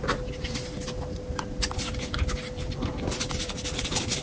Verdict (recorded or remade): recorded